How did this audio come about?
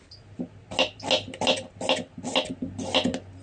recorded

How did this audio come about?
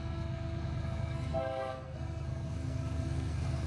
remade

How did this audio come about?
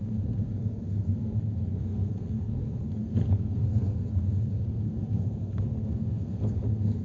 remade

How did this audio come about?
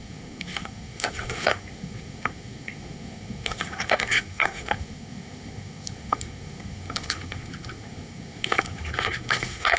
remade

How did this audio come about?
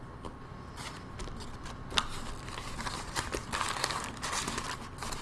recorded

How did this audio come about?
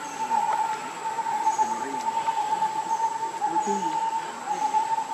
recorded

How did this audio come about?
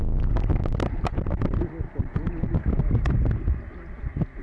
recorded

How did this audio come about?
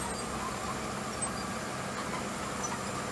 recorded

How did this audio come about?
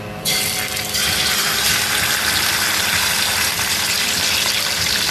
recorded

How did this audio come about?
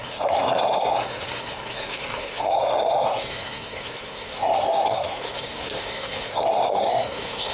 remade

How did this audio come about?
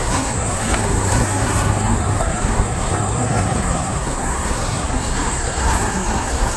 remade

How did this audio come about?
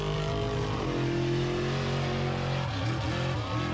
recorded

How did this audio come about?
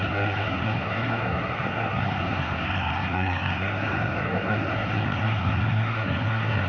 remade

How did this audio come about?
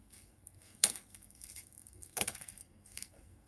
remade